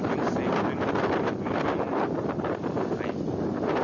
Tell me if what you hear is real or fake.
real